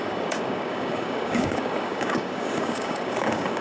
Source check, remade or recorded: remade